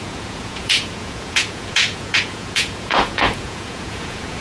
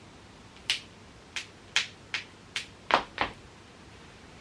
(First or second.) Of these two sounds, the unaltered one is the second